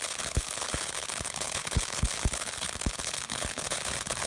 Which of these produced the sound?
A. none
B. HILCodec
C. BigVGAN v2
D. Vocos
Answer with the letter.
B